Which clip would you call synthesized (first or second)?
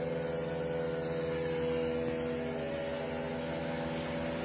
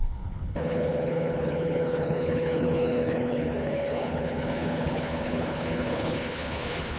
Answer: second